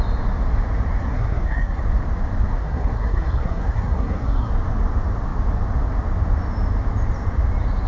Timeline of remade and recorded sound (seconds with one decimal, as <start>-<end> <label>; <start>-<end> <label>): 0.0-1.0 recorded; 1.0-1.8 remade; 1.8-2.5 recorded; 2.5-4.5 remade; 4.5-7.9 recorded